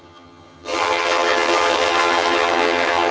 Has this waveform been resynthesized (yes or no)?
yes